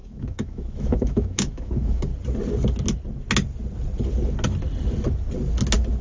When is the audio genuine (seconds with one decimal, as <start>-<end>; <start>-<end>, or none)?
2.1-6.0